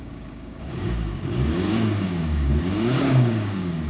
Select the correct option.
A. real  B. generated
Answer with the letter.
B